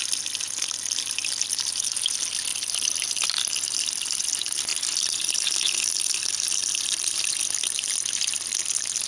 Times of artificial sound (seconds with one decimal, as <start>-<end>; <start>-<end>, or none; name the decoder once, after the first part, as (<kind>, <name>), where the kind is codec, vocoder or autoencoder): 4.7-5.7 (vocoder, BigVGAN v2); 6.6-7.2